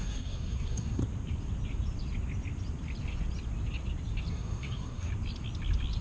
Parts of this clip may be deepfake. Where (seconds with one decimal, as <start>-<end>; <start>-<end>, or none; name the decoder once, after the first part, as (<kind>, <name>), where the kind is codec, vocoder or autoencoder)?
0.0-1.0 (codec, SNAC); 4.3-5.1